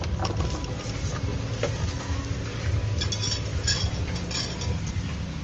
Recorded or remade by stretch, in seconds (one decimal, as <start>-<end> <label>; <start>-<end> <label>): 0.0-3.5 recorded; 3.5-4.2 remade; 4.2-5.4 recorded

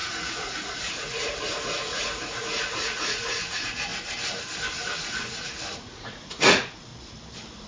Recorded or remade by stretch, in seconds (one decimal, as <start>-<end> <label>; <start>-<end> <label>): 0.0-3.9 remade; 3.9-5.4 recorded; 5.4-6.9 remade; 6.9-7.7 recorded

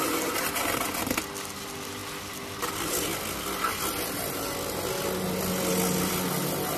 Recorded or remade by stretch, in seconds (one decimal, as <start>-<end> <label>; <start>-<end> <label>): 0.0-6.8 recorded

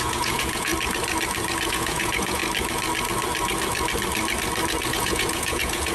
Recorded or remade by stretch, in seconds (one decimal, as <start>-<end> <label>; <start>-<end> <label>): 0.0-0.7 remade; 0.7-1.7 recorded; 1.7-2.4 remade; 2.4-4.9 recorded; 4.9-5.9 remade

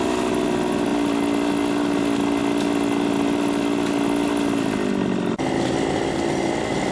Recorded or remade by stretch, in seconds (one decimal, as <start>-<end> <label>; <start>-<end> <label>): 0.0-6.9 recorded

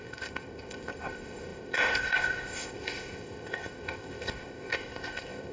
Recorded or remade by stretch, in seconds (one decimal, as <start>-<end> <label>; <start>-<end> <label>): 0.0-5.5 remade